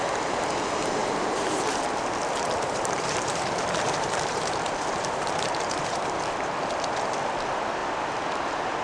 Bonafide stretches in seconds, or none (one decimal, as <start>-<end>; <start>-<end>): 0.0-1.0; 6.0-8.8